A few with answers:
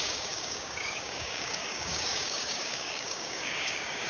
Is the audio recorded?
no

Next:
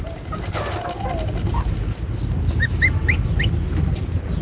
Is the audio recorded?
yes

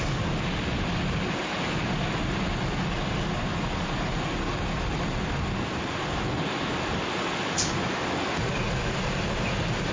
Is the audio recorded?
yes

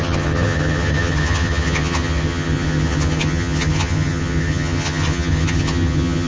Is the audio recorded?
no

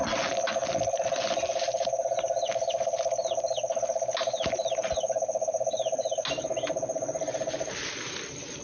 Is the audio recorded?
yes